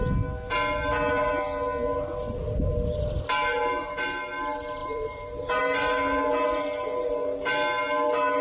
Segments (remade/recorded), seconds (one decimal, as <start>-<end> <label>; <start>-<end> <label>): 0.0-4.8 recorded; 4.8-5.6 remade; 5.6-8.4 recorded